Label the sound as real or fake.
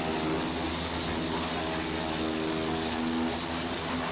real